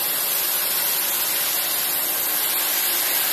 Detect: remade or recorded recorded